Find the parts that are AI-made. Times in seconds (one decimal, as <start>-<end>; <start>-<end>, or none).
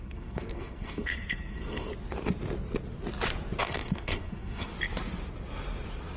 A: 0.0-1.9; 3.6-4.7